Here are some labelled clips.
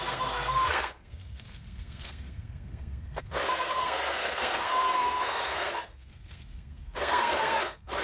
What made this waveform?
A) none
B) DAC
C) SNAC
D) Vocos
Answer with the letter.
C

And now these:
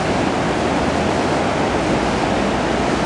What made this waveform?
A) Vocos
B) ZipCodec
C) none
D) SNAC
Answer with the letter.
C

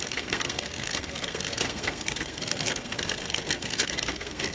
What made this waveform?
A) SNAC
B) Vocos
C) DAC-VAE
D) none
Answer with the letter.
A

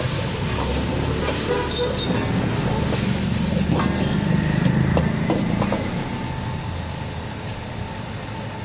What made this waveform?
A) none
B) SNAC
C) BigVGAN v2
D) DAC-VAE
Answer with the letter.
A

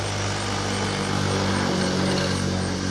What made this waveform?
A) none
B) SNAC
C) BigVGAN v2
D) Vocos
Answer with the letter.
A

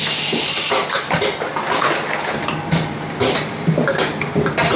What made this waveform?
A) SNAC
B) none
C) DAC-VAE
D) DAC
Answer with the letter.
B